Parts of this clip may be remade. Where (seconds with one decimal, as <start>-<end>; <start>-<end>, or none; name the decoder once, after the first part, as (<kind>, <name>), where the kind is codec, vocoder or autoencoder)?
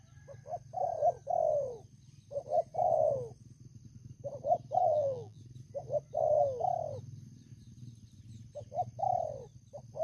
4.8-5.4 (vocoder, BigVGAN v2)